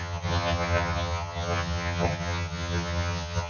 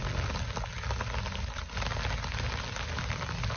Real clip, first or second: second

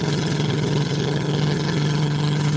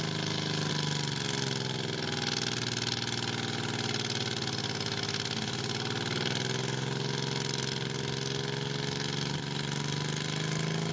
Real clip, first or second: second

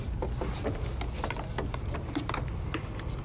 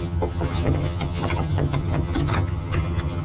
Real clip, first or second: first